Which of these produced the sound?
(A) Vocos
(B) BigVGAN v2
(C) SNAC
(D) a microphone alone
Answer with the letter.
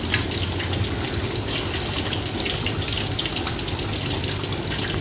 D